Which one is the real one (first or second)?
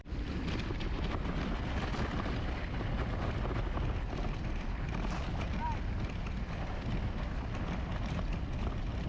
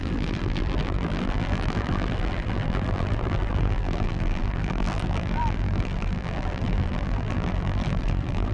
first